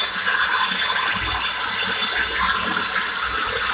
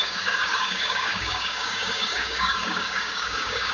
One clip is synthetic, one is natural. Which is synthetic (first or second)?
second